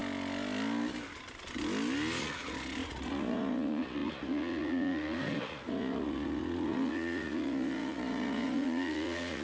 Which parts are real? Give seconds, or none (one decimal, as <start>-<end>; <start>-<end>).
0.0-2.2